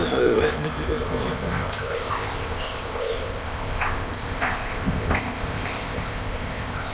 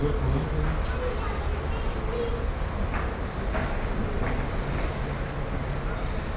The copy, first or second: first